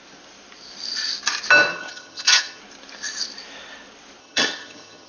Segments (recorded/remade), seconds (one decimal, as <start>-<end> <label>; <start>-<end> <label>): 0.0-1.7 recorded; 1.7-2.6 remade; 2.6-4.2 recorded; 4.2-5.1 remade